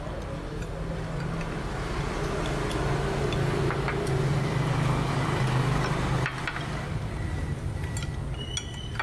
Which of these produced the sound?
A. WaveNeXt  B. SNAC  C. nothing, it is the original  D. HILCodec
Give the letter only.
C